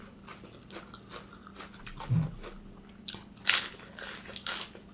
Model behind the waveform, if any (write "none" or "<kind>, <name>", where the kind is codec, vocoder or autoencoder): none